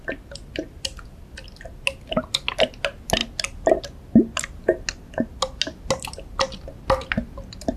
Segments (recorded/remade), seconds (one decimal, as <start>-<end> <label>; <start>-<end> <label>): 0.0-7.8 recorded